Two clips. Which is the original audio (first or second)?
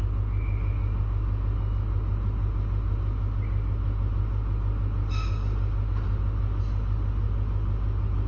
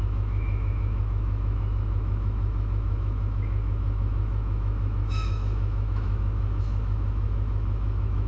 first